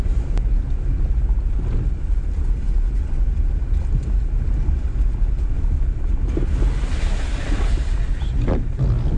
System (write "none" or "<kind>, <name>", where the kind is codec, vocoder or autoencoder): none